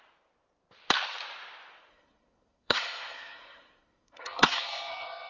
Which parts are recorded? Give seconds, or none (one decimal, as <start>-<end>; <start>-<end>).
0.0-1.9